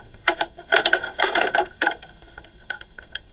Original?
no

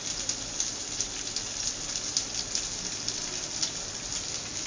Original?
yes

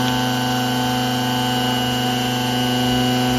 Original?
yes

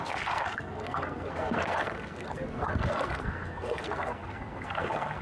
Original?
no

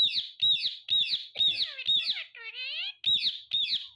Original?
yes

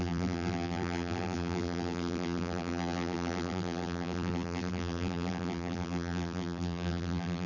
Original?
no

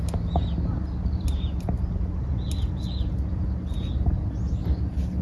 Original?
yes